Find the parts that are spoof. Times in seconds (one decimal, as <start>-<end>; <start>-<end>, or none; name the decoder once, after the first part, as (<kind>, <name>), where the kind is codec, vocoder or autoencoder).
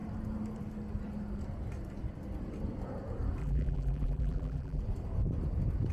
3.4-4.8 (vocoder, BigVGAN v2)